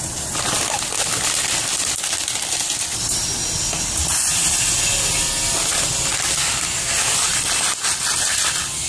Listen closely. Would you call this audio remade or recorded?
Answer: recorded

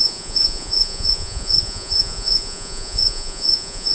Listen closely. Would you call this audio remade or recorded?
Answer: remade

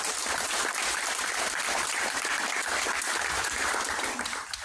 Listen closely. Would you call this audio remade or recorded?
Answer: remade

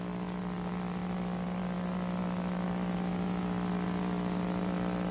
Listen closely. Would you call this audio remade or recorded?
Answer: recorded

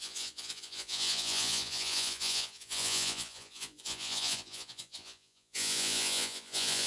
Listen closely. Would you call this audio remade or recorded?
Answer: remade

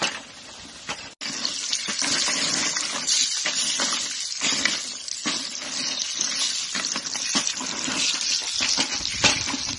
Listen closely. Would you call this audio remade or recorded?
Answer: recorded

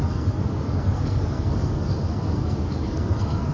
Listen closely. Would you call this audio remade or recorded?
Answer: remade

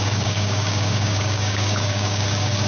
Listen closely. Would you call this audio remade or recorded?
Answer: remade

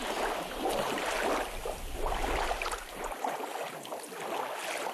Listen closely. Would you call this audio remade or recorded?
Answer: recorded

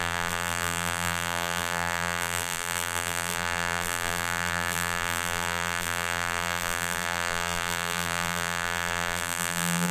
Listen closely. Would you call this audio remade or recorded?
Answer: remade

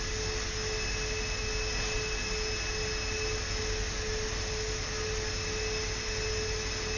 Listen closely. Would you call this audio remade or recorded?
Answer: recorded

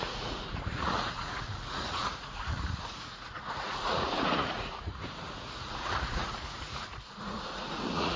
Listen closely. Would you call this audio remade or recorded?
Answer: remade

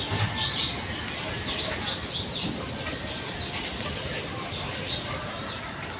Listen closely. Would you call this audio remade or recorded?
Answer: recorded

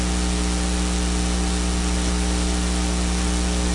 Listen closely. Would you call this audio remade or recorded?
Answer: recorded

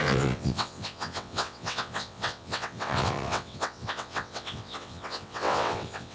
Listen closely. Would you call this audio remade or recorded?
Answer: remade